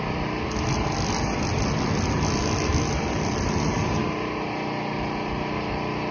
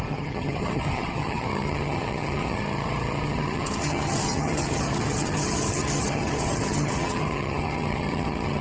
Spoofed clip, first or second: second